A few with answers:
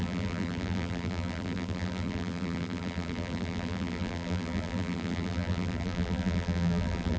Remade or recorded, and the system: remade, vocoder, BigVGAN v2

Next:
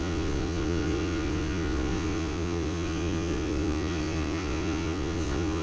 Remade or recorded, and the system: remade, vocoder, Vocos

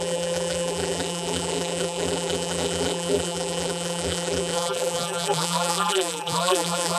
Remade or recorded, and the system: remade, vocoder, BigVGAN v2